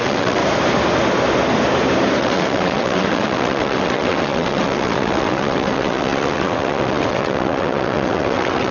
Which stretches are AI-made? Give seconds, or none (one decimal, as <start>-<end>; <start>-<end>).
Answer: 0.0-0.4; 2.2-8.7